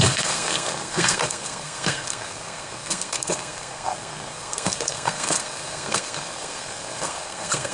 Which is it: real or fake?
fake